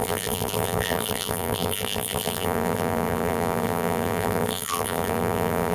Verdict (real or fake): fake